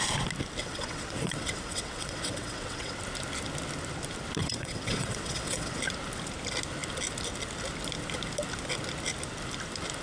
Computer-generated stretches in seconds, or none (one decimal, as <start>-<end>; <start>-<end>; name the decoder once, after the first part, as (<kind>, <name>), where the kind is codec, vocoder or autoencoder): 0.6-3.0 (vocoder, WaveNeXt); 4.4-5.8